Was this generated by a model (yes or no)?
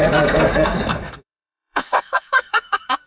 yes